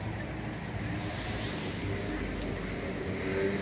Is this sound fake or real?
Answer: real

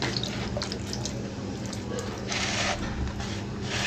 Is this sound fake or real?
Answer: real